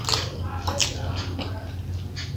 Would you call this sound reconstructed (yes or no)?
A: no